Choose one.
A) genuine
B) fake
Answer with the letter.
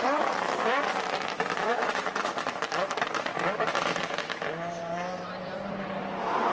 B